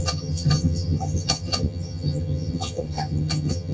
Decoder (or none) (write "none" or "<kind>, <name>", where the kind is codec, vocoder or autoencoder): vocoder, HiFi-GAN